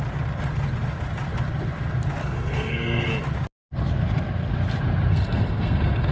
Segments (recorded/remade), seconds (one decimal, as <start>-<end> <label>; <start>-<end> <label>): 0.0-2.2 recorded; 2.2-3.1 remade; 3.1-5.1 recorded; 5.1-6.1 remade